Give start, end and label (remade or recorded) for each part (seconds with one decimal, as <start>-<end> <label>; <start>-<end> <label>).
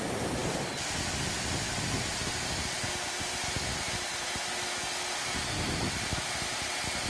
0.0-7.1 recorded